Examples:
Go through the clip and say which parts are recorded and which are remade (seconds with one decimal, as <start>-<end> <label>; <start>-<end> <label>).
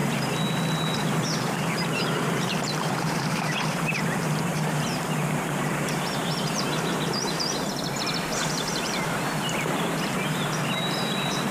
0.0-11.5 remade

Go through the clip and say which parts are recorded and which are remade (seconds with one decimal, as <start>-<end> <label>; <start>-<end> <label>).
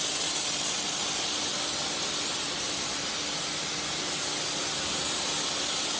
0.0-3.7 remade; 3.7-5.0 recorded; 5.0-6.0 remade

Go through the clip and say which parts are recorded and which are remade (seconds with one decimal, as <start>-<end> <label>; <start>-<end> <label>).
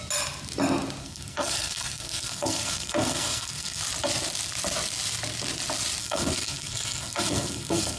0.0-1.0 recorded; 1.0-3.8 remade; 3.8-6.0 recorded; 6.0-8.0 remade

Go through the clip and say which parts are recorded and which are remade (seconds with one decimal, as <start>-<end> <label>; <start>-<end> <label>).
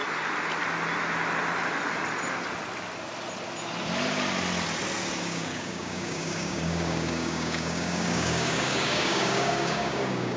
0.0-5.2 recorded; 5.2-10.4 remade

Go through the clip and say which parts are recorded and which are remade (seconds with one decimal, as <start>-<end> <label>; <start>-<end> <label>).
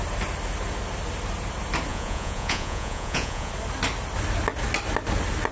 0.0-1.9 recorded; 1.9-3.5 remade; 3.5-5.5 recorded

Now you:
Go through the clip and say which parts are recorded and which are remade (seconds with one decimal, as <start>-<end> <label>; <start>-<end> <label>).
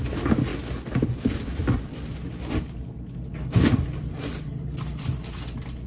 0.0-5.9 recorded